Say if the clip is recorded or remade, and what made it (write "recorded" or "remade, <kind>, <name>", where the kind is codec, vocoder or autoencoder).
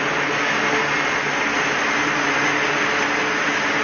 recorded